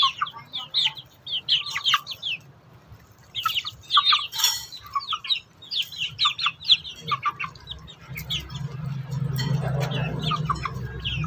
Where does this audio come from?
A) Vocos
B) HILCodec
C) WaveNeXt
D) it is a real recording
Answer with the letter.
D